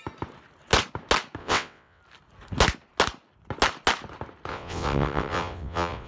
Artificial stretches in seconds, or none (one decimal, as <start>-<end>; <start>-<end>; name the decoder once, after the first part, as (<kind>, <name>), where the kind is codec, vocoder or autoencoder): 1.4-2.0 (vocoder, WaveNeXt); 4.5-6.1